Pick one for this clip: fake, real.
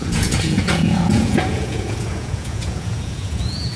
fake